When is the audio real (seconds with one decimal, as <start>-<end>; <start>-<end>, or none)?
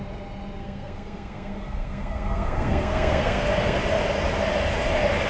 0.0-0.6; 3.8-5.3